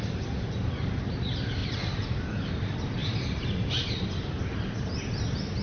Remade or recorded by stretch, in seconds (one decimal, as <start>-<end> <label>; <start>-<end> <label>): 0.0-1.6 recorded; 1.6-2.5 remade; 2.5-3.0 recorded; 3.0-3.5 remade; 3.5-5.6 recorded